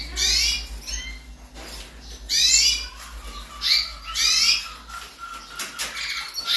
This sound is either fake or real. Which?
real